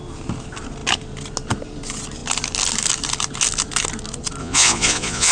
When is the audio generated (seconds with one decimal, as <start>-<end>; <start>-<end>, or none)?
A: 4.4-5.3